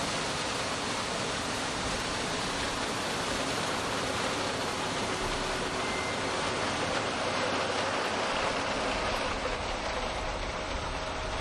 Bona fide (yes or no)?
yes